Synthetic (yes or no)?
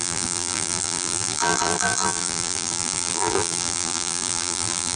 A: yes